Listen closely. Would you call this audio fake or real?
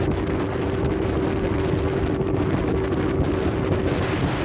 real